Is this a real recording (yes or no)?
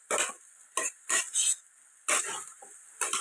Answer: yes